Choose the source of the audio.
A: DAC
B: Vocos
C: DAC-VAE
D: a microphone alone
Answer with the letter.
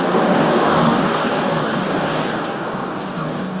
A